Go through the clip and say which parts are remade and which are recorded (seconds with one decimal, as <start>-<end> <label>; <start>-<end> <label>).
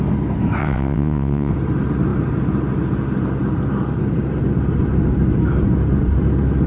0.0-0.6 recorded; 0.6-1.5 remade; 1.5-6.7 recorded